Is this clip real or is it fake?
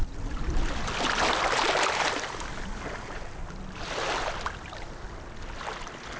real